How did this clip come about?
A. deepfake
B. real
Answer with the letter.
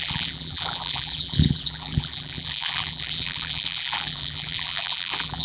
A